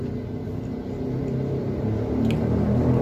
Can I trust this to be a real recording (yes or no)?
yes